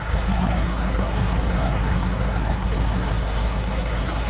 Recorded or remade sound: remade